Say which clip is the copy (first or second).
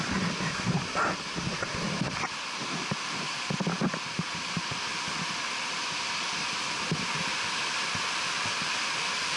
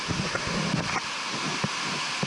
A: first